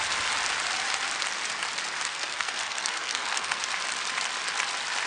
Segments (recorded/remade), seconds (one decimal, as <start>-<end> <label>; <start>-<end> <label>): 0.0-2.1 recorded; 2.1-3.6 remade; 3.6-5.1 recorded